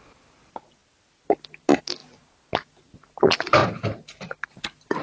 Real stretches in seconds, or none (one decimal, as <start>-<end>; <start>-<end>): 0.0-5.0